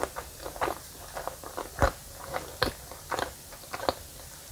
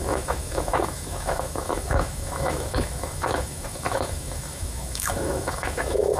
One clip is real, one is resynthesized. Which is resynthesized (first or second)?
second